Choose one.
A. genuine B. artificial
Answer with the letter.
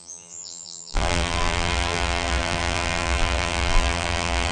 B